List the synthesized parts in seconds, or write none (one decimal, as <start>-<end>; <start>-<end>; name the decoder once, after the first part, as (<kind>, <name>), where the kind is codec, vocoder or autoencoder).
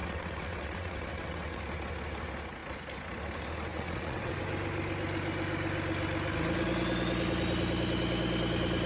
0.0-1.6 (vocoder, WaveNeXt); 3.7-4.4